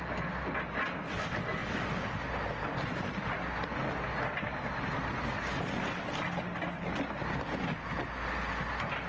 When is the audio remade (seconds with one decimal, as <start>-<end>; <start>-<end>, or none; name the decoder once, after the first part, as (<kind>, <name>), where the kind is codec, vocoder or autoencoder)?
none